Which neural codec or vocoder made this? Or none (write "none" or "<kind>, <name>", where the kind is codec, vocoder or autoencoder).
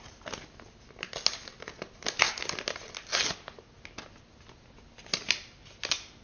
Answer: none